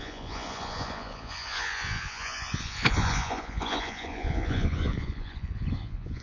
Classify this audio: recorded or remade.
remade